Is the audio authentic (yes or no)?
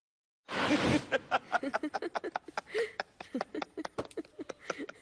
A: yes